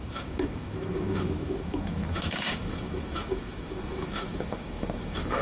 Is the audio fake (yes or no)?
yes